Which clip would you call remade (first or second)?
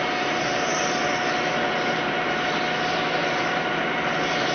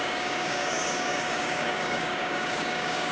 second